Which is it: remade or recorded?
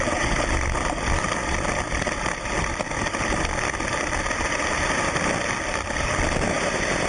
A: recorded